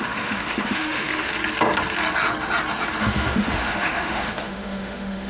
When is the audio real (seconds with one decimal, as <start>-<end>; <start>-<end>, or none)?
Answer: 1.3-3.0